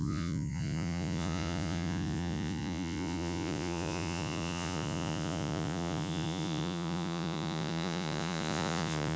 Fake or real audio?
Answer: fake